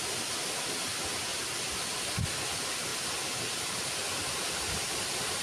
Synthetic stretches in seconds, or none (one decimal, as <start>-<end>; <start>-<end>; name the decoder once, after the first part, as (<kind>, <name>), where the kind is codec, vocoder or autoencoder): none